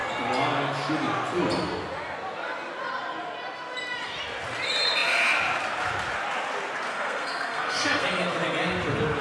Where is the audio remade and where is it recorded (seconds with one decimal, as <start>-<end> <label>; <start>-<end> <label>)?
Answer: 0.0-6.9 recorded; 6.9-8.1 remade; 8.1-9.2 recorded